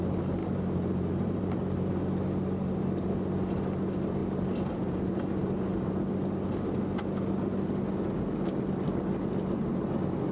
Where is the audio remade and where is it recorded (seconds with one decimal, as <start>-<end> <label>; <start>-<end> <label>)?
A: 0.0-0.4 recorded; 0.4-1.9 remade; 1.9-4.2 recorded; 4.2-5.0 remade; 5.0-10.3 recorded